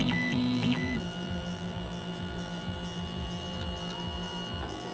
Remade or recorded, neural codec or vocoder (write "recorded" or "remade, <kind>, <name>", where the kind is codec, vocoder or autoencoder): remade, vocoder, BigVGAN v2